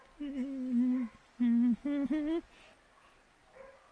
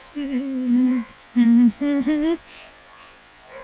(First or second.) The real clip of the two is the first